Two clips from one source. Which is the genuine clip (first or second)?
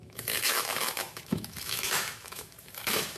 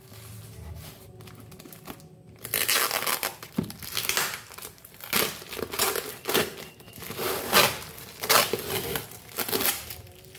second